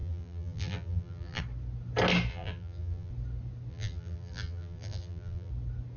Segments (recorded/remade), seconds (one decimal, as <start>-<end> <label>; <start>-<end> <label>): 0.0-1.4 remade; 1.4-2.3 recorded; 2.3-3.1 remade; 3.1-3.7 recorded; 3.7-5.5 remade; 5.5-6.0 recorded